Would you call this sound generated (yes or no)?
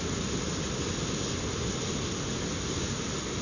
no